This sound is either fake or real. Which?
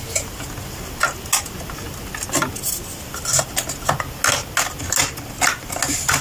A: real